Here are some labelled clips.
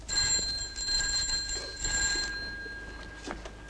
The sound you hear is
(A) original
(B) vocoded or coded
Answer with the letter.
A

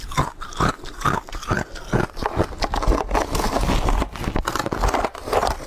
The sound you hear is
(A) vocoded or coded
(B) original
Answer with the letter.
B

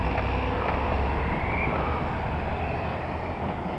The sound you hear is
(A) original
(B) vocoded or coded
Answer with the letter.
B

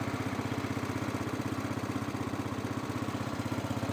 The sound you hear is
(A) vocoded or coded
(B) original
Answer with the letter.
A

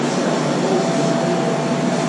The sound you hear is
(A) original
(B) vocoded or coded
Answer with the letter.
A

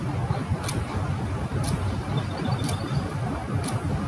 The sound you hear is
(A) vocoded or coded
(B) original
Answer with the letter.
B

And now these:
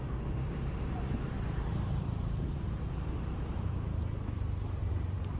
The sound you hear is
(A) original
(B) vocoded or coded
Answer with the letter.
B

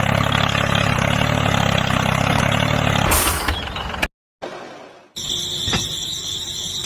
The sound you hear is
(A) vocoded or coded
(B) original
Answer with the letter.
B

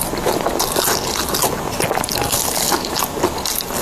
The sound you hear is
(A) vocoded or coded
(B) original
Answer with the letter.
B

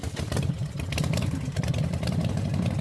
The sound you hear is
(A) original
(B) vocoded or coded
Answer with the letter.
B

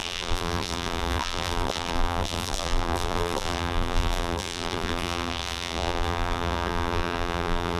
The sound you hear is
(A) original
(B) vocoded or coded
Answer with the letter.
B